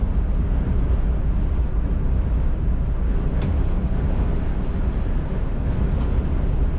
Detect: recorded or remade recorded